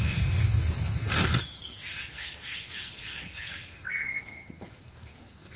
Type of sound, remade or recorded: remade